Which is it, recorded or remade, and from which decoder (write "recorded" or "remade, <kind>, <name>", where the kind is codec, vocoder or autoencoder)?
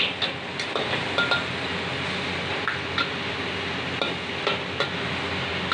recorded